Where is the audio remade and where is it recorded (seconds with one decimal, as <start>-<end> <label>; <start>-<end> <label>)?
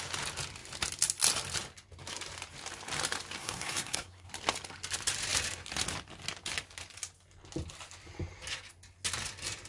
0.0-3.4 recorded; 3.4-4.3 remade; 4.3-9.7 recorded